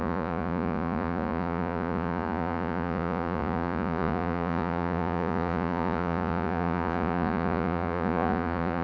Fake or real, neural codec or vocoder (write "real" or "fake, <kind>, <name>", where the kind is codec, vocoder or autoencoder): fake, vocoder, Vocos